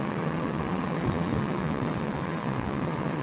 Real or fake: fake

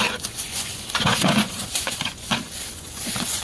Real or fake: fake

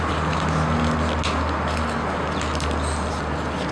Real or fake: real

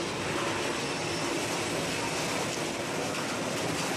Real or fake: real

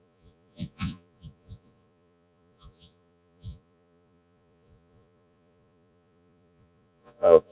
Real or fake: fake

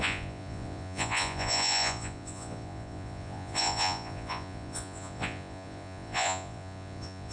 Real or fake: fake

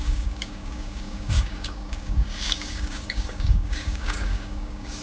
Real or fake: fake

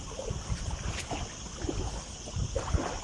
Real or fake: real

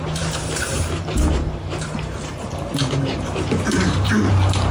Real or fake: fake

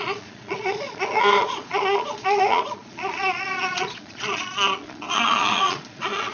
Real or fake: fake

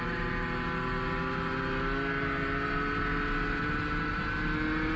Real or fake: real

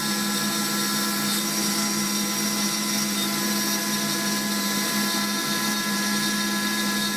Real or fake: real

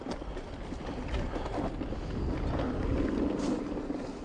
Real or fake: real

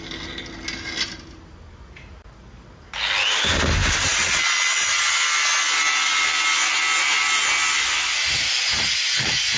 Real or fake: real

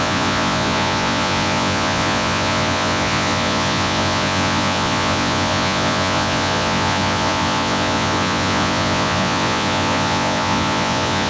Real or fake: fake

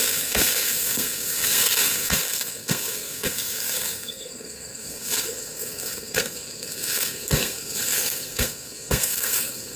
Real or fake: fake